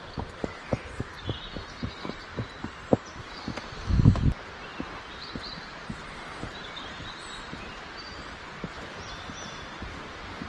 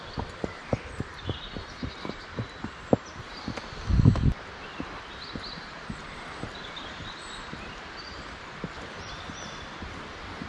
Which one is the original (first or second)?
first